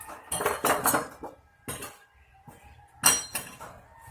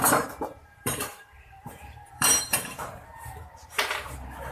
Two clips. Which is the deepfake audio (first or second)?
second